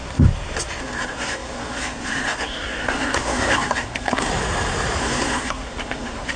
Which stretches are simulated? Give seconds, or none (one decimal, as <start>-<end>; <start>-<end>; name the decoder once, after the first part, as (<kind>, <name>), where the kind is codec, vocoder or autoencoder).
0.8-4.3 (codec, SNAC); 5.0-6.4